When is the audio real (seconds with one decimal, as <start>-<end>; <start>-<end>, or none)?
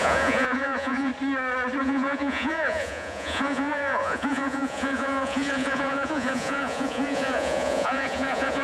1.1-1.8